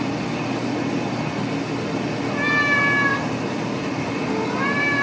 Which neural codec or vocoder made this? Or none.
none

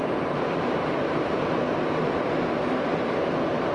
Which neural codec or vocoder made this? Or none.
vocoder, BigVGAN v2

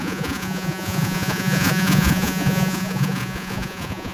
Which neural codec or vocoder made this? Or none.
vocoder, Vocos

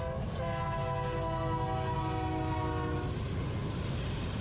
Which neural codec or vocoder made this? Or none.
none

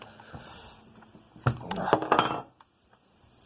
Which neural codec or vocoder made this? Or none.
none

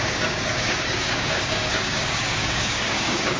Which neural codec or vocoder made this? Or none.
codec, DAC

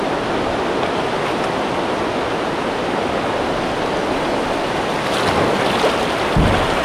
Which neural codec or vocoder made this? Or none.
none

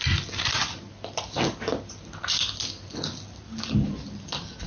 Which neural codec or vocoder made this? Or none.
none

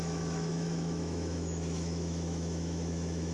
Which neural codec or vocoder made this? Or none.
autoencoder, DAC-VAE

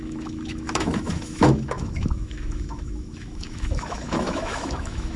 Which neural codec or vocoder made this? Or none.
autoencoder, DAC-VAE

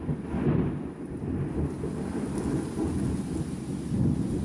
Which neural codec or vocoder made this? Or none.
none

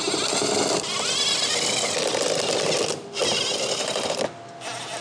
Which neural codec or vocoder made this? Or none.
none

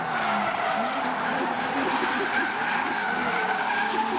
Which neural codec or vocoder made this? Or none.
none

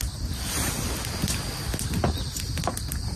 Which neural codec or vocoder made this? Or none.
none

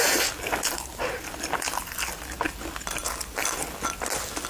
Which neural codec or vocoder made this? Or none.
none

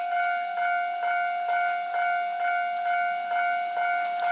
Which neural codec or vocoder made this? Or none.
none